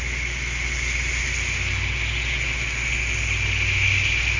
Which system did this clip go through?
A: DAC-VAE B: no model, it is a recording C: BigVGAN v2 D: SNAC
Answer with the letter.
B